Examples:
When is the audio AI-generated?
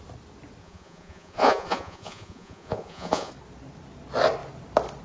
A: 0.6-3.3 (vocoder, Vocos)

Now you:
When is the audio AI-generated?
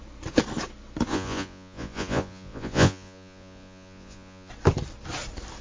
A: 1.1-4.5 (vocoder, Vocos)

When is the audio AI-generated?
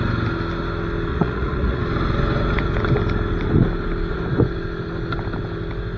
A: 1.1-1.8 (vocoder, Vocos)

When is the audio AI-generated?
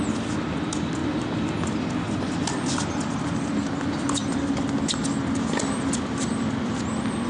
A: none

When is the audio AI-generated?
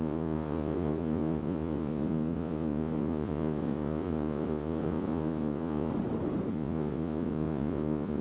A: 0.0-5.9 (vocoder, Vocos); 6.5-8.2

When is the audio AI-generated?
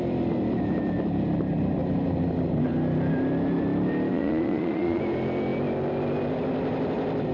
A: 4.1-5.0 (vocoder, Vocos)